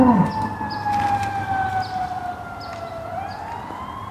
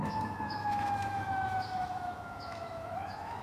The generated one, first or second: second